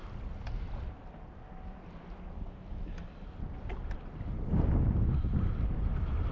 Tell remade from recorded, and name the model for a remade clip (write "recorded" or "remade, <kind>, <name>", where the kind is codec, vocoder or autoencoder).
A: recorded